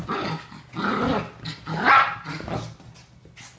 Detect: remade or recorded recorded